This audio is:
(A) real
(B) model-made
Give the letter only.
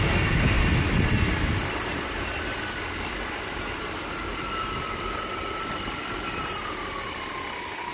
A